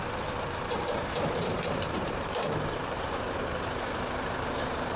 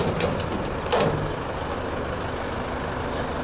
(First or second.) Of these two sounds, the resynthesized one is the first